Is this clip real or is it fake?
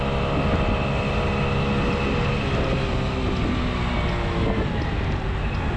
real